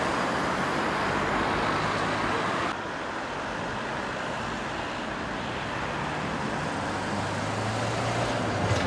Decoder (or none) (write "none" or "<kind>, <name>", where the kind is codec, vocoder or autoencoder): none